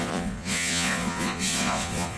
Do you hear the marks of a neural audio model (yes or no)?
yes